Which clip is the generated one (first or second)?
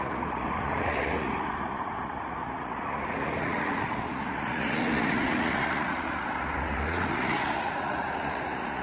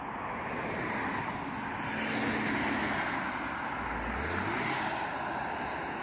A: first